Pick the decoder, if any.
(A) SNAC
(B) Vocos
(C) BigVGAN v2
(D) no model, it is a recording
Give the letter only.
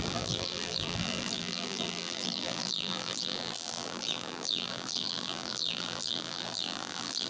C